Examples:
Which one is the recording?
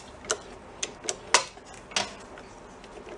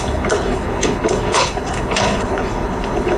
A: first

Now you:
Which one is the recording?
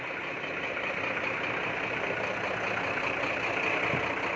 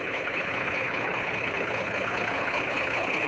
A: first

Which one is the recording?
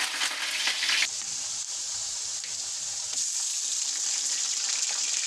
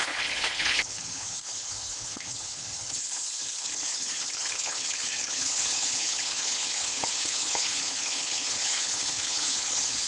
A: first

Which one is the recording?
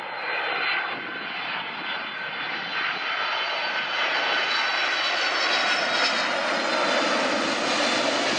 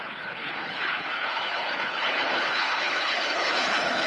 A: first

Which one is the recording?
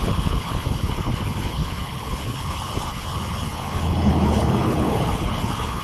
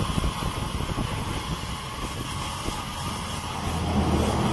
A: second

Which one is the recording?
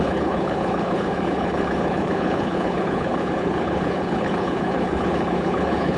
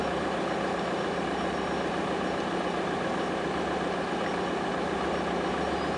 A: second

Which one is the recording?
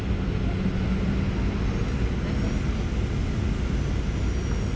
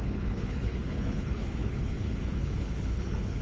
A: first